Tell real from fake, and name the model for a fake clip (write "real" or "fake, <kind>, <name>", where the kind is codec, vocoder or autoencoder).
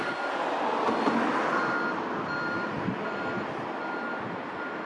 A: real